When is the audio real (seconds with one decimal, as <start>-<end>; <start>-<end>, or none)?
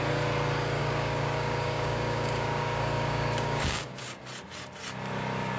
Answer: 0.0-0.8; 4.2-5.6